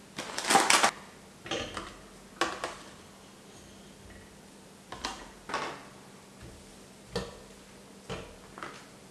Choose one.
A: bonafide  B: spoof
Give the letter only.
A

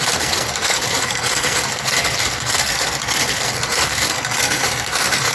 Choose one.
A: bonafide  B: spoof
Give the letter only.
B